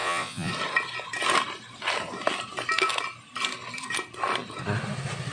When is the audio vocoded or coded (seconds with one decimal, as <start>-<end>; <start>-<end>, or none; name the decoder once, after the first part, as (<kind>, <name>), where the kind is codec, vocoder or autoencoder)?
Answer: 0.0-0.5 (vocoder, Vocos)